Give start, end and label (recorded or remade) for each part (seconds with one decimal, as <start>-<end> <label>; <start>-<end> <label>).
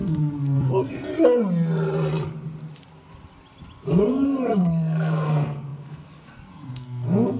0.0-1.1 remade; 1.1-3.9 recorded; 3.9-7.4 remade